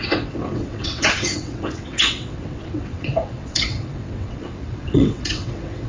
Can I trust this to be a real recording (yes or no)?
no